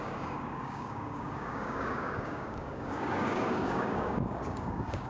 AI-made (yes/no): yes